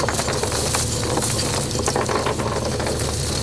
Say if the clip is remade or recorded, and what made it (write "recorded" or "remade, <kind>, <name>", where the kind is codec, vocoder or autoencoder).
recorded